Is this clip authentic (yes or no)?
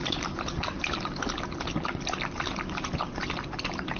yes